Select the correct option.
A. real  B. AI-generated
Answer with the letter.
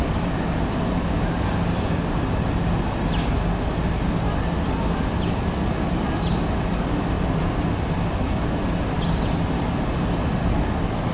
A